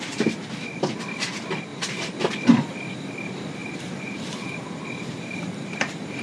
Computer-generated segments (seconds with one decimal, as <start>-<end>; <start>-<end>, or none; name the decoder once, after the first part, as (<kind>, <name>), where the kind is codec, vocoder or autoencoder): 1.7-2.2 (vocoder, BigVGAN v2); 3.6-4.6